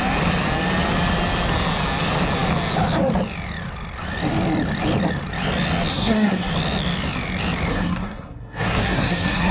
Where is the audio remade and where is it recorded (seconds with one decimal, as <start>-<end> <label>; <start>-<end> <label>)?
0.0-5.9 recorded; 5.9-6.5 remade; 6.5-7.7 recorded; 7.7-9.5 remade